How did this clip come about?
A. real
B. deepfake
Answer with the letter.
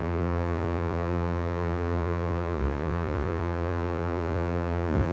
B